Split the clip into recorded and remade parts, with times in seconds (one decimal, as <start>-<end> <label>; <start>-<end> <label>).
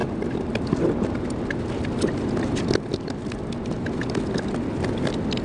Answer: 0.0-5.4 recorded